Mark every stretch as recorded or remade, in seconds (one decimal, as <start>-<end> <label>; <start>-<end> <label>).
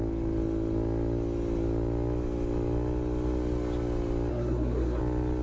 0.0-4.3 recorded; 4.3-5.0 remade; 5.0-5.4 recorded